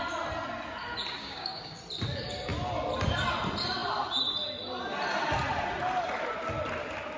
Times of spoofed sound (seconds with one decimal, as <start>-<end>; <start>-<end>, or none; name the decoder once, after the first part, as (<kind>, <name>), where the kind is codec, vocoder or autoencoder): 1.2-1.8 (codec, DAC)